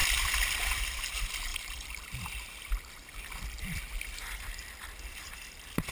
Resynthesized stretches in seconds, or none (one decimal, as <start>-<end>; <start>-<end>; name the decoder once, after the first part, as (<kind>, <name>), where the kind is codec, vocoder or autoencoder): 0.0-5.9 (vocoder, BigVGAN v2)